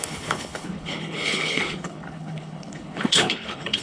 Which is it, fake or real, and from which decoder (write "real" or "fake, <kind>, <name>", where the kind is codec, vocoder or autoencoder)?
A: fake, codec, HILCodec